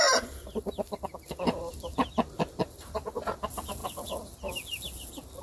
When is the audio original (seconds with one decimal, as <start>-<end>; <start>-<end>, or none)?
0.0-5.4